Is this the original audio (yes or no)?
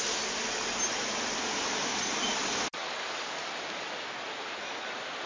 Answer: yes